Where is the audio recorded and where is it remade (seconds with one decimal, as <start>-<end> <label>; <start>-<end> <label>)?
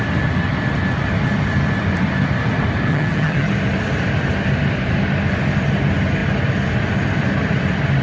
0.0-2.9 recorded; 2.9-3.5 remade; 3.5-8.0 recorded